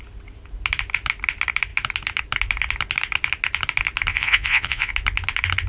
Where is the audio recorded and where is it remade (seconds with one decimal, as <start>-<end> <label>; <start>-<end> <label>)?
0.0-4.1 recorded; 4.1-4.9 remade; 4.9-5.7 recorded